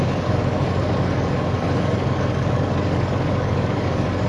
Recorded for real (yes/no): no